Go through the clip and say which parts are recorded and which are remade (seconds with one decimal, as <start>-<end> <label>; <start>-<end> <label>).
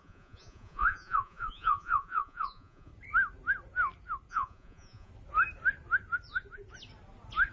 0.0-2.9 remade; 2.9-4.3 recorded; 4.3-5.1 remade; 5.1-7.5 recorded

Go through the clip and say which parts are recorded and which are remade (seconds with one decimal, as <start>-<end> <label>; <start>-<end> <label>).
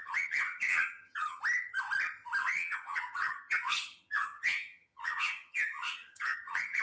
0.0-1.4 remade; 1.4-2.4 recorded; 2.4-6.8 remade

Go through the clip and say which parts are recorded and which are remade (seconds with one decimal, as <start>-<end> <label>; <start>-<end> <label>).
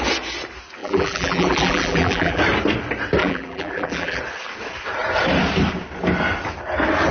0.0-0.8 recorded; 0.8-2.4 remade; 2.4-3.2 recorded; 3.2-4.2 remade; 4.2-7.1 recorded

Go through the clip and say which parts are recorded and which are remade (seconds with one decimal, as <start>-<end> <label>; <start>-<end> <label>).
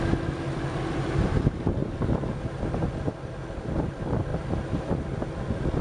0.0-5.8 recorded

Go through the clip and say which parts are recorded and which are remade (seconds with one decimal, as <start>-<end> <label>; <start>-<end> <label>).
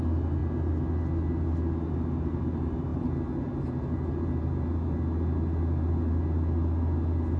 0.0-7.4 recorded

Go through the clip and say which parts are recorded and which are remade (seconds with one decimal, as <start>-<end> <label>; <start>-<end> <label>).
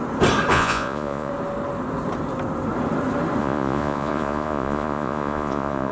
0.0-0.5 recorded; 0.5-1.3 remade; 1.3-3.4 recorded; 3.4-5.9 remade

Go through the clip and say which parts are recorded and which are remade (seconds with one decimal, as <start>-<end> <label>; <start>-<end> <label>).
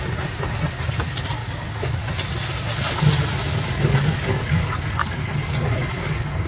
0.0-1.4 recorded; 1.4-2.0 remade; 2.0-3.5 recorded; 3.5-6.5 remade